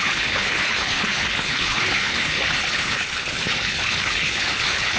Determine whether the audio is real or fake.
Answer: fake